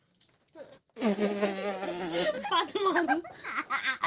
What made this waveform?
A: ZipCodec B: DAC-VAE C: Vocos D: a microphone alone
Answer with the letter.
D